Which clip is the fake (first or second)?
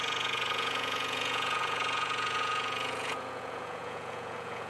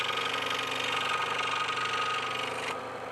first